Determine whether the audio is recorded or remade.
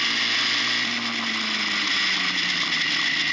recorded